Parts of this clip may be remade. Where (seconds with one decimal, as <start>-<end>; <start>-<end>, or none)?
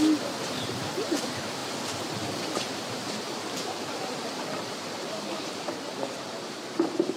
0.0-7.2